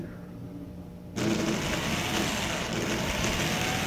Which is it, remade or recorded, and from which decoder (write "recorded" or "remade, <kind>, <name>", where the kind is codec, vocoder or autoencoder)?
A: recorded